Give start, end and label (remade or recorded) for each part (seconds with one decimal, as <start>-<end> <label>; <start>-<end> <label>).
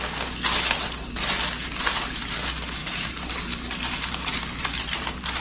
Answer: 0.0-1.7 recorded; 1.7-2.3 remade; 2.3-2.8 recorded; 2.8-5.4 remade